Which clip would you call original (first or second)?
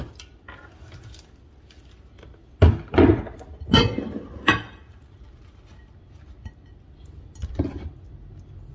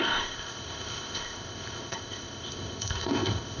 first